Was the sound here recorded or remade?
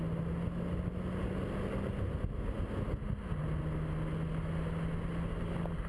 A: recorded